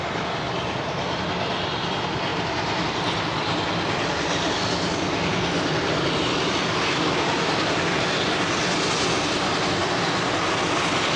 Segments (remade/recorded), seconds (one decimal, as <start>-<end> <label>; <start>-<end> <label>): 0.0-11.2 recorded